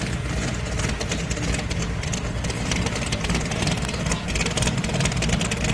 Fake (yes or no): no